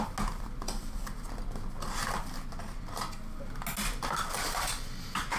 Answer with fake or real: real